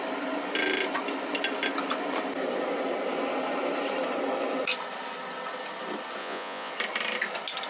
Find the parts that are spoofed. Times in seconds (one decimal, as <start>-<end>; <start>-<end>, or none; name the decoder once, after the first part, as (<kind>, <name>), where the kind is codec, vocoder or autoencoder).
6.2-6.7 (vocoder, Vocos)